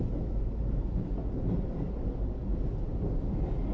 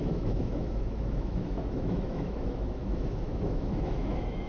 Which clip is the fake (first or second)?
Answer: second